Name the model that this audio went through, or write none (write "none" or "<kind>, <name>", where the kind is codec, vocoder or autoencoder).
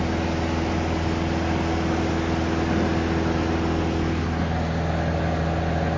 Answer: none